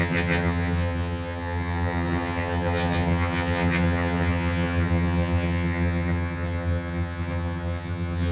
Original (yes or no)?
no